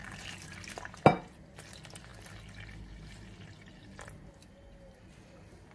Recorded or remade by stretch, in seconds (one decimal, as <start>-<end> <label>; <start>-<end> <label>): 0.0-5.7 recorded